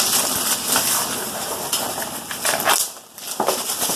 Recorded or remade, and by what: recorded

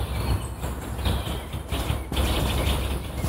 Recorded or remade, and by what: recorded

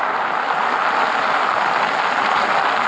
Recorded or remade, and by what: recorded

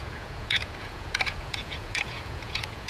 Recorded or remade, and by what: remade, vocoder, Vocos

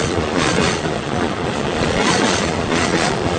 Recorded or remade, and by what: remade, vocoder, Vocos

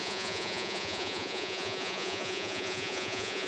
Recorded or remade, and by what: remade, vocoder, Vocos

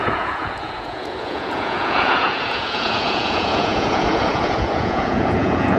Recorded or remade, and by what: remade, vocoder, Vocos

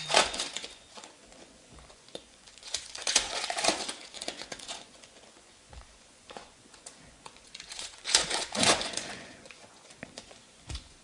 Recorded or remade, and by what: remade, vocoder, Vocos